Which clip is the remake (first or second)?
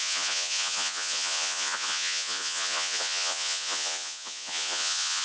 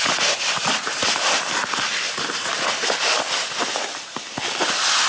first